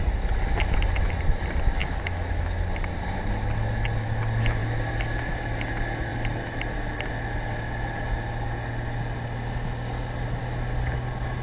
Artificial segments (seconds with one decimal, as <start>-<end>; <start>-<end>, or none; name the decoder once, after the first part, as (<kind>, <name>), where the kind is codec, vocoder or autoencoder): 1.8-2.6 (autoencoder, DAC-VAE)